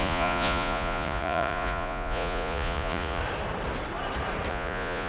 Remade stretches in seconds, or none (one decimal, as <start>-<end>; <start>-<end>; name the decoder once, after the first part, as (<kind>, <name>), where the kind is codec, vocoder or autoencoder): 0.0-3.2 (vocoder, Vocos); 4.5-5.1